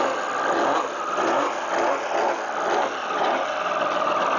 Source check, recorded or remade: recorded